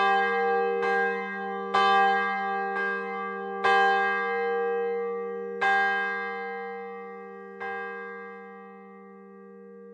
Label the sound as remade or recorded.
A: recorded